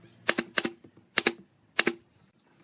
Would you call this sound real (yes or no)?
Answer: yes